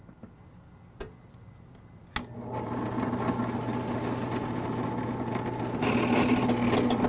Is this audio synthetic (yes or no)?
no